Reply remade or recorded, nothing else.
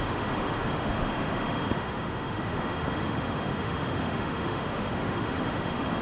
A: remade